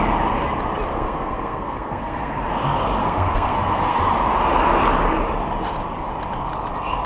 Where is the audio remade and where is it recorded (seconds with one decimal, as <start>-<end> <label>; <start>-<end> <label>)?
0.0-0.9 recorded; 0.9-2.3 remade; 2.3-3.0 recorded; 3.0-4.0 remade; 4.0-7.1 recorded